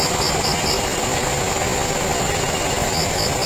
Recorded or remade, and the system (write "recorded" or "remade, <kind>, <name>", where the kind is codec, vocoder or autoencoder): recorded